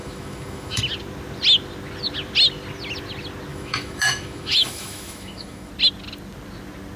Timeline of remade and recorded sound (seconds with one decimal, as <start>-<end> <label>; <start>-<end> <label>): 0.0-0.8 remade; 0.8-3.5 recorded; 3.5-5.7 remade; 5.7-7.0 recorded